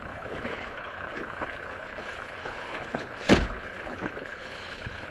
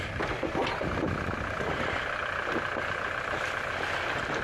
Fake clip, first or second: first